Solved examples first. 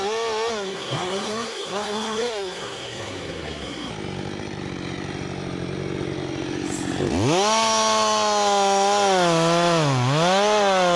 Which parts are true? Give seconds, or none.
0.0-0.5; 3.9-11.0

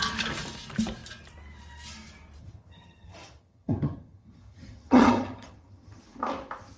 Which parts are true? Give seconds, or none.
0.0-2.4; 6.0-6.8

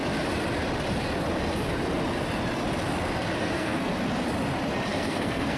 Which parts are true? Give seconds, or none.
0.0-3.4; 3.9-4.9